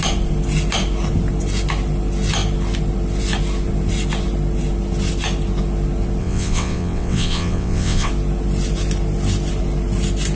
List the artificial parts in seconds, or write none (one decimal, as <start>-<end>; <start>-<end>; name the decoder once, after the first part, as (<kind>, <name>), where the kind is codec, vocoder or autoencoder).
6.2-8.1 (vocoder, WaveNeXt)